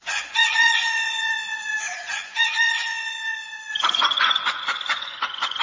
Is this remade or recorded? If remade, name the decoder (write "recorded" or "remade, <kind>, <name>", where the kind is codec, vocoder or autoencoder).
remade, vocoder, Vocos